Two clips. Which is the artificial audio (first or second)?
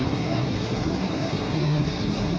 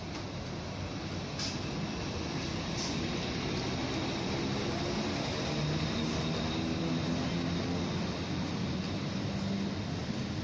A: first